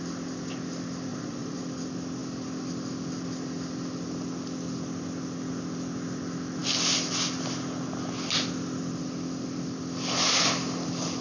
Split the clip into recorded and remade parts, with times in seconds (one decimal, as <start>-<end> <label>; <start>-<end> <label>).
0.0-1.1 recorded; 1.1-1.6 remade; 1.6-11.2 recorded